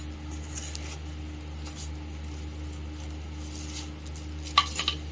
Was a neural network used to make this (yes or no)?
no